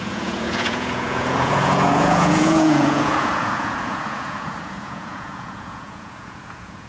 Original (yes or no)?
no